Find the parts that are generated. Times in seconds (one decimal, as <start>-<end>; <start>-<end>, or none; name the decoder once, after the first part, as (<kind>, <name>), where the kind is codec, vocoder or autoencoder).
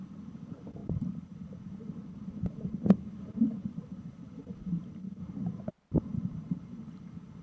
0.8-4.4 (vocoder, BigVGAN v2); 6.1-7.4